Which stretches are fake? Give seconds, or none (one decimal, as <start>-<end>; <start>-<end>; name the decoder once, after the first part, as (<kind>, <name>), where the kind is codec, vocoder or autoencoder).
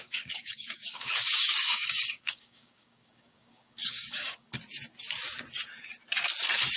0.0-4.5 (codec, DAC)